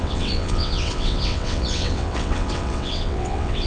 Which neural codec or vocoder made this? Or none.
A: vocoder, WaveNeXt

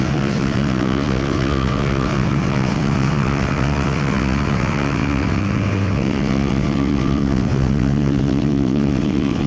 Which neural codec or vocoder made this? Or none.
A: vocoder, WaveNeXt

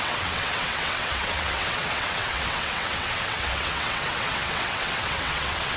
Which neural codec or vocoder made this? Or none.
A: vocoder, WaveNeXt